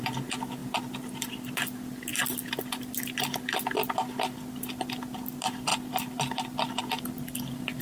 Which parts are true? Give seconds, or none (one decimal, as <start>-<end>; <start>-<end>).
0.0-0.6; 1.3-2.1; 2.6-5.7; 6.8-7.8